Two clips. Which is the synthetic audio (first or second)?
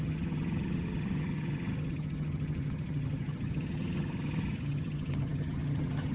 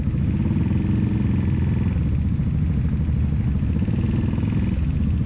first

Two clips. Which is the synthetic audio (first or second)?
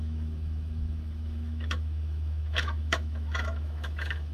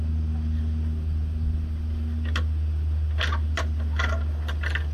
first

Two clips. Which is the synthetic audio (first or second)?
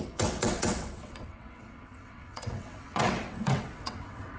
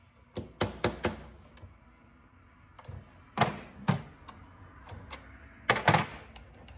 first